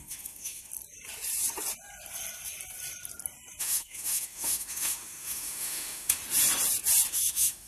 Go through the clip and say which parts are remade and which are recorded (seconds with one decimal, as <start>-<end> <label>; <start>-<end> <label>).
0.0-0.7 remade; 0.7-3.6 recorded; 3.6-6.2 remade; 6.2-7.1 recorded; 7.1-7.7 remade